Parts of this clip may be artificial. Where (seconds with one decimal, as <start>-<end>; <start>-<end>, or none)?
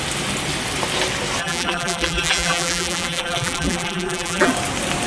1.4-4.5